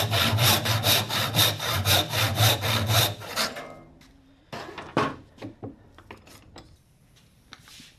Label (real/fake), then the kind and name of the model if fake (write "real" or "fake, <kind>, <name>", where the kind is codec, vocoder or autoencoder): real